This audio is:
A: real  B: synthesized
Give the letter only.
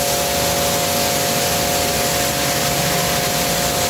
A